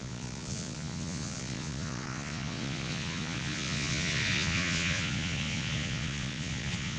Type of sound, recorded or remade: remade